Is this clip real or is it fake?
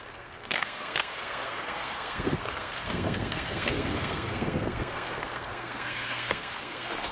fake